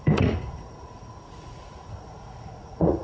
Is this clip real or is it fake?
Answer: fake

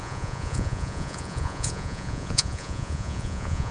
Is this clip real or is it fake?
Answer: fake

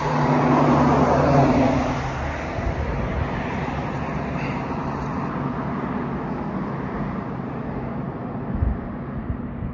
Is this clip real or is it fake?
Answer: real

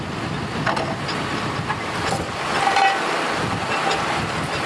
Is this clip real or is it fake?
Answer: real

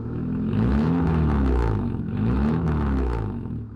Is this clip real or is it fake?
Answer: fake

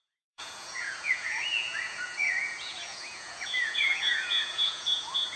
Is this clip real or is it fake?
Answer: fake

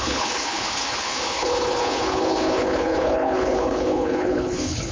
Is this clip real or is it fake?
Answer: fake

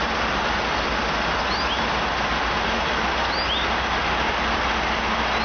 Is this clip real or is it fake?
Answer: real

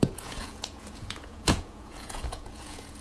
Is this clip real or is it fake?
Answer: fake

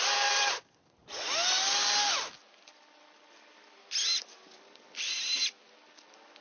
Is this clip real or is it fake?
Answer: real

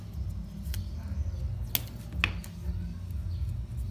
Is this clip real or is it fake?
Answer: real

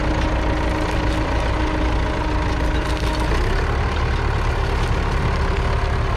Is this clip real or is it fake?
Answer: real